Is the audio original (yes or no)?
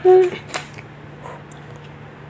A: yes